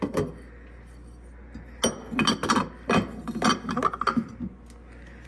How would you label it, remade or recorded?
recorded